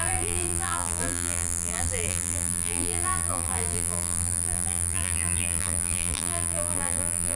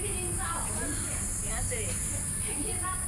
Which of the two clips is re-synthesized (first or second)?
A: first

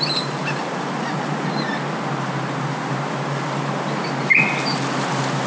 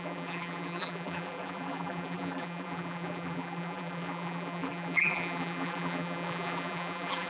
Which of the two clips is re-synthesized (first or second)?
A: second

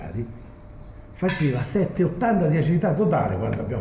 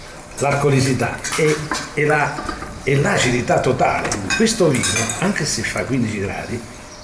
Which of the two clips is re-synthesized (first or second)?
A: second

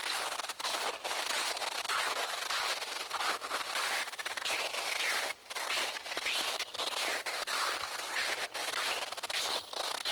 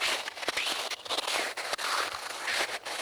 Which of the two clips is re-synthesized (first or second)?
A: first